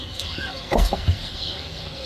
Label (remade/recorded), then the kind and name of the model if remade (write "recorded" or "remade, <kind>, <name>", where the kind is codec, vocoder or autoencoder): remade, codec, SNAC